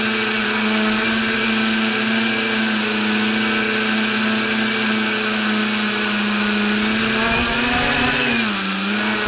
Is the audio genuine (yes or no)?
yes